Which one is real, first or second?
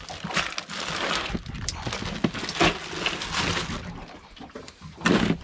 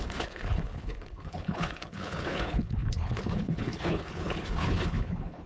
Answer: first